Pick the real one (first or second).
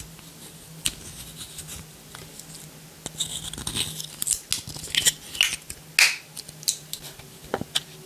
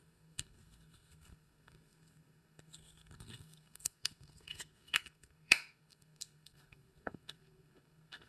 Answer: first